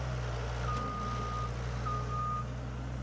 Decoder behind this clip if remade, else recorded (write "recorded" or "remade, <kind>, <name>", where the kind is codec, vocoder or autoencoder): recorded